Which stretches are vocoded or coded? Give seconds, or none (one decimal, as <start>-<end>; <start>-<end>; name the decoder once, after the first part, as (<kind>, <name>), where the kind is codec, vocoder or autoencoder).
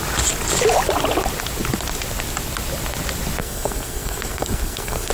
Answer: 3.4-5.1 (codec, SNAC)